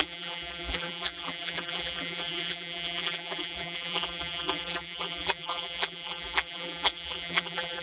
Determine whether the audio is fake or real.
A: fake